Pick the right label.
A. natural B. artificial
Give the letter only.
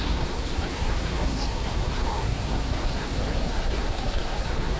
B